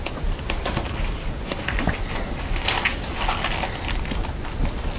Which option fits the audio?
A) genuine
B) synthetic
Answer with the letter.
A